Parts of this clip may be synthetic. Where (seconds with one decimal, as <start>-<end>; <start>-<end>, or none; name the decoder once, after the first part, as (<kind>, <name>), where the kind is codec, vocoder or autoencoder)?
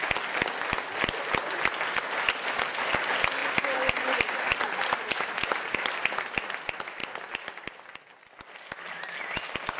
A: none